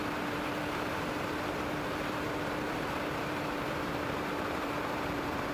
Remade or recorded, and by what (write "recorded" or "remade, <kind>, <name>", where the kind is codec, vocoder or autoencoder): remade, vocoder, BigVGAN v2